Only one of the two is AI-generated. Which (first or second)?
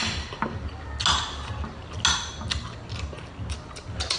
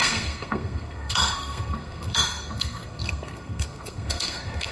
second